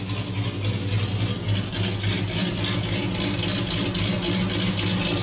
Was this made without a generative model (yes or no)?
yes